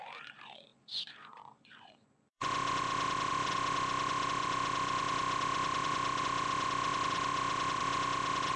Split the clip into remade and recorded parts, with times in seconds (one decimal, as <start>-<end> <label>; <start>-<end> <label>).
0.0-8.6 remade

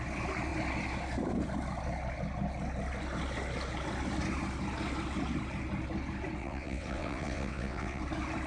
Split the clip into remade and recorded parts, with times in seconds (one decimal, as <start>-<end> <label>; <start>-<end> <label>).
0.0-6.4 recorded; 6.4-8.0 remade; 8.0-8.5 recorded

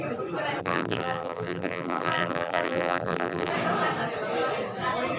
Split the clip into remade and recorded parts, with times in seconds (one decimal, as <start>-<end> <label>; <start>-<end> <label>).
0.0-0.6 recorded; 0.6-3.5 remade; 3.5-5.2 recorded

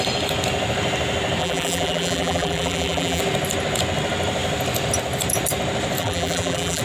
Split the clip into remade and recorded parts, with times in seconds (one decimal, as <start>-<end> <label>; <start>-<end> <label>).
0.0-1.4 recorded; 1.4-3.2 remade; 3.2-6.0 recorded; 6.0-6.8 remade

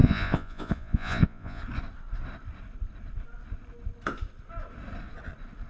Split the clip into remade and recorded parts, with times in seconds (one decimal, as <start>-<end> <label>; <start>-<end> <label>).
0.0-1.6 remade; 1.6-5.7 recorded

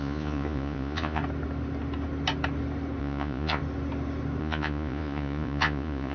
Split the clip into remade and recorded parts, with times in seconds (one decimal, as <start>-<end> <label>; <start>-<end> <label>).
0.0-1.2 remade; 1.2-3.0 recorded; 3.0-3.6 remade; 3.6-4.4 recorded; 4.4-6.1 remade

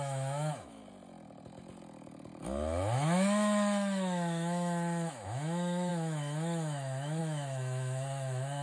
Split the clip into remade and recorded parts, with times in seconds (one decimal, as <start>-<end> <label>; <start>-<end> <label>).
0.0-0.8 remade; 0.8-2.4 recorded; 2.4-8.6 remade